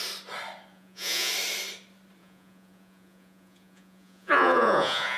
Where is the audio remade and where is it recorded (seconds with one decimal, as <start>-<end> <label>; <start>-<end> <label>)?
0.0-0.7 recorded; 0.7-1.3 remade; 1.3-2.2 recorded; 2.2-5.2 remade